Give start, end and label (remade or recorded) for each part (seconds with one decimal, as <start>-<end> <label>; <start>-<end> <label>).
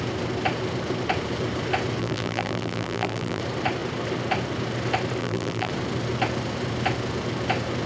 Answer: 0.0-2.0 recorded; 2.0-3.4 remade; 3.4-5.2 recorded; 5.2-5.7 remade; 5.7-7.9 recorded